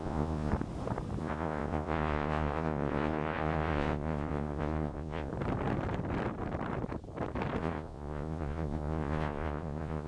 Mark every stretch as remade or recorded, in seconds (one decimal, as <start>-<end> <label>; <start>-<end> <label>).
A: 0.0-0.5 remade; 0.5-1.2 recorded; 1.2-5.3 remade; 5.3-7.6 recorded; 7.6-10.1 remade